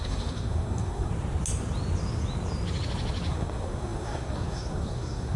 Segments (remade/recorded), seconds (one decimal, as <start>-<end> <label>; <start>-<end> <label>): 0.0-1.1 remade; 1.1-3.3 recorded; 3.3-5.4 remade